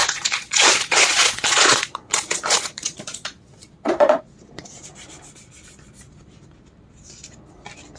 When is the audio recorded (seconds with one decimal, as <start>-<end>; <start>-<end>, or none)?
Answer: 4.2-8.0